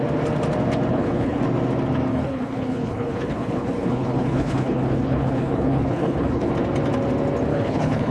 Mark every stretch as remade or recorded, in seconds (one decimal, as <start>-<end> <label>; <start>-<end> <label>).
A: 0.0-0.9 recorded; 0.9-1.4 remade; 1.4-2.1 recorded; 2.1-6.5 remade; 6.5-7.5 recorded; 7.5-8.1 remade